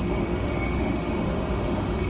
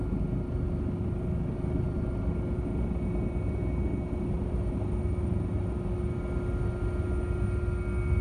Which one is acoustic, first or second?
second